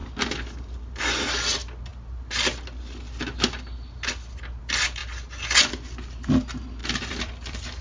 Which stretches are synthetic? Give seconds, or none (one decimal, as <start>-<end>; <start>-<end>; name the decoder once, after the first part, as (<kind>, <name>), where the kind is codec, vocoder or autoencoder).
6.8-7.8 (vocoder, BigVGAN v2)